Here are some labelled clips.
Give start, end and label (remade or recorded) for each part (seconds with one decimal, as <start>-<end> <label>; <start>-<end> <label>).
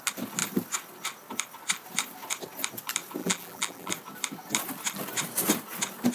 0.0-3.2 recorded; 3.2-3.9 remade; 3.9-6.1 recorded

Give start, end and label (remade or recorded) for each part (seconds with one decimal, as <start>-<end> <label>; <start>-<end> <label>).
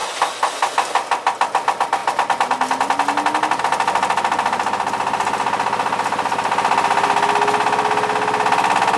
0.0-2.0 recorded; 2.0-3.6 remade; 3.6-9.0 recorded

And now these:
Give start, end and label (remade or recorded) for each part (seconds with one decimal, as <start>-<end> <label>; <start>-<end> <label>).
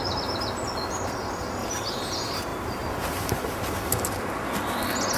0.0-1.6 recorded; 1.6-2.1 remade; 2.1-2.5 recorded; 2.5-3.9 remade; 3.9-5.2 recorded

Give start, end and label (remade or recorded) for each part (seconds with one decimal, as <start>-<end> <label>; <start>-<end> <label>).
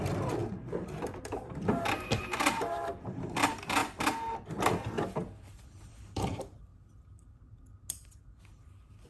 0.0-6.7 remade; 6.7-8.5 recorded; 8.5-9.1 remade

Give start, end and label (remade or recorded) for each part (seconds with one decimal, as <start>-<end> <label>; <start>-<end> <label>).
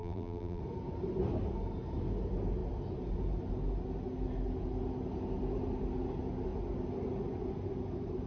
0.0-0.6 remade; 0.6-8.3 recorded